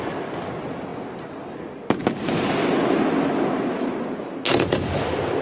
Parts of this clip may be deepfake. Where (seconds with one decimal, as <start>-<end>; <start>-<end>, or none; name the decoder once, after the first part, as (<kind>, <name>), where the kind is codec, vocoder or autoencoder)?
none

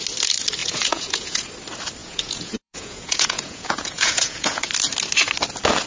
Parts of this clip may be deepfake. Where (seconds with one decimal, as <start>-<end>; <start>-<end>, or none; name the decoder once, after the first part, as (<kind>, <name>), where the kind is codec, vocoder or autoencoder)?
0.6-1.5 (vocoder, Vocos); 2.0-4.7

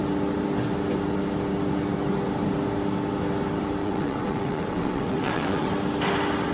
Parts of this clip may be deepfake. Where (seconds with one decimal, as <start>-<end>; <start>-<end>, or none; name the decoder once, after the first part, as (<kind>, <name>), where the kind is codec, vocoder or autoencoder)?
3.8-5.7 (vocoder, WaveNeXt)

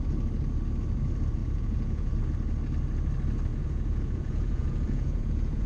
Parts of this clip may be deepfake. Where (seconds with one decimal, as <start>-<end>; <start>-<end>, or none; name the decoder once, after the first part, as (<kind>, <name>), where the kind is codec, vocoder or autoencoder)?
1.4-2.1 (vocoder, Vocos); 3.5-5.7

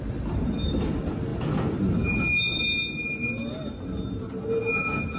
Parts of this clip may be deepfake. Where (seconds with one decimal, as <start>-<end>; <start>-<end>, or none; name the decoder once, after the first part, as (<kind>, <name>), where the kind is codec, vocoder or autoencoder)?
none

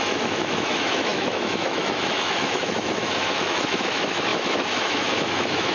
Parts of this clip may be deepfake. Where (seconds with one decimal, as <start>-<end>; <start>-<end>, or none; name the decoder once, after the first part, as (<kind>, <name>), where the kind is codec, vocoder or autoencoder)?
0.0-5.7 (autoencoder, DAC-VAE)

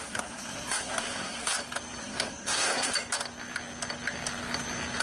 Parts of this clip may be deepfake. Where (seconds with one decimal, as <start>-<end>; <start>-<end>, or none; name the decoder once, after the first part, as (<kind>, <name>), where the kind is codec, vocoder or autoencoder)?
0.0-1.5 (codec, SNAC); 2.0-2.9

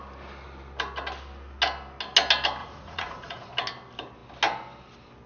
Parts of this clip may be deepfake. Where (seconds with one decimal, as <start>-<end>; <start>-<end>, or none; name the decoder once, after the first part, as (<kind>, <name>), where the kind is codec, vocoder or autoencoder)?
2.6-3.5 (vocoder, Vocos)